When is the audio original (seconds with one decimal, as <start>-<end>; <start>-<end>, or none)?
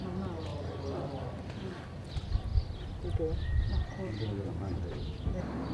0.0-5.7